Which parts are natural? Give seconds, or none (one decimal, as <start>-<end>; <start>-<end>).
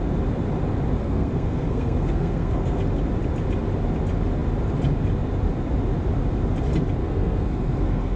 0.0-1.0; 2.8-7.0